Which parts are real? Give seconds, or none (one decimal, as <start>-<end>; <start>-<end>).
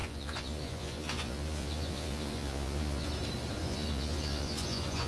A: 3.1-3.6